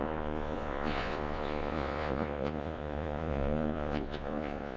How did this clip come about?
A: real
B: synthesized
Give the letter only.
B